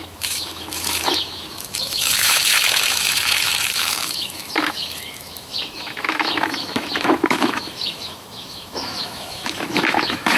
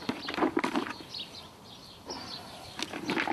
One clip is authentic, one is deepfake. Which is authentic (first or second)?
second